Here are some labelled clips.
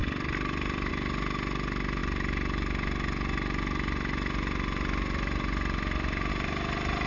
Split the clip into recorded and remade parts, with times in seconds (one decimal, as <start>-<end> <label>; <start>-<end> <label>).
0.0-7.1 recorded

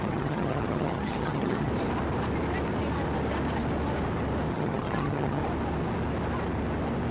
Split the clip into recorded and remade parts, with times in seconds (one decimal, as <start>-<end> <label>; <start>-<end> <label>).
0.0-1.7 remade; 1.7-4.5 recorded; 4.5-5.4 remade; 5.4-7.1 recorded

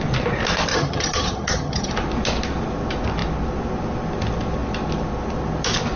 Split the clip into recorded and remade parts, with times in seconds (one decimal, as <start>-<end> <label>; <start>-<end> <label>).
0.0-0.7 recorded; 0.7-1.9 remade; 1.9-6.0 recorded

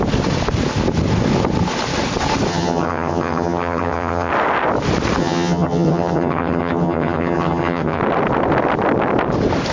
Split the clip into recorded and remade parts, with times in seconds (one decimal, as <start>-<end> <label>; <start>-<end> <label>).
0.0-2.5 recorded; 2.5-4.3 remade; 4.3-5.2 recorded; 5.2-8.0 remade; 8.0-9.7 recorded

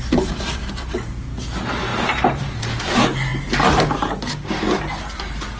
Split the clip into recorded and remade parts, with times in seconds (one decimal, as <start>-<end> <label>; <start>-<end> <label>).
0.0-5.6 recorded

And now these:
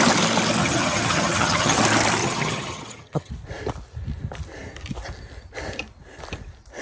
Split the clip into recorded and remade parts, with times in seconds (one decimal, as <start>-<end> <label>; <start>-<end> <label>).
0.0-0.6 recorded; 0.6-1.8 remade; 1.8-2.2 recorded; 2.2-3.3 remade; 3.3-6.8 recorded

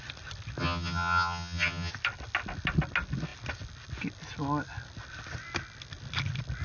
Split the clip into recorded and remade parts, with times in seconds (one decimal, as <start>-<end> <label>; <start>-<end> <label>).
0.0-0.6 recorded; 0.6-1.9 remade; 1.9-6.6 recorded